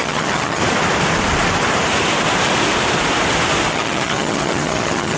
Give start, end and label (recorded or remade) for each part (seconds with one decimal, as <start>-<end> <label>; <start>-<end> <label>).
0.0-0.6 remade; 0.6-3.7 recorded; 3.7-5.2 remade

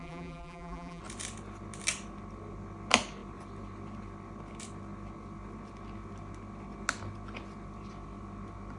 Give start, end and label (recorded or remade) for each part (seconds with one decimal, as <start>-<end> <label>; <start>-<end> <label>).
0.0-1.0 remade; 1.0-8.8 recorded

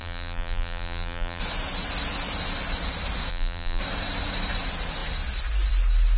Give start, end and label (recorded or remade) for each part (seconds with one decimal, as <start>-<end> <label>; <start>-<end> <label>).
0.0-1.4 remade; 1.4-3.3 recorded; 3.3-3.8 remade; 3.8-6.2 recorded

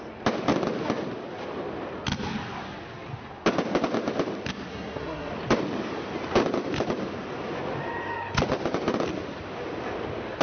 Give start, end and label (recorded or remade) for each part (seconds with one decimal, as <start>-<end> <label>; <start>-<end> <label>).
0.0-4.7 recorded; 4.7-5.3 remade; 5.3-10.4 recorded

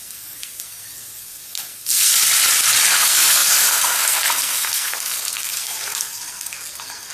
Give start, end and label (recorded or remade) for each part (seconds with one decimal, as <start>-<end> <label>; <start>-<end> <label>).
0.0-2.1 remade; 2.1-3.0 recorded; 3.0-7.1 remade

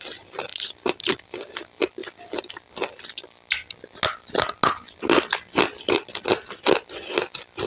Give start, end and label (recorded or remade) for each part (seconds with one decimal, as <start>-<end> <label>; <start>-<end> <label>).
0.0-7.7 recorded

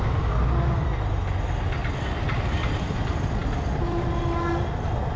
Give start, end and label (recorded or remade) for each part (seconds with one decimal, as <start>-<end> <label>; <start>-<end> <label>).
0.0-1.8 recorded; 1.8-2.9 remade; 2.9-3.4 recorded; 3.4-4.2 remade; 4.2-5.2 recorded